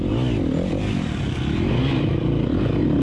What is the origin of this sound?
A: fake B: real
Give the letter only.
B